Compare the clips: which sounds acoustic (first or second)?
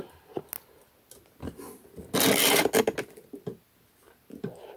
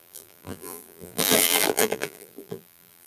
first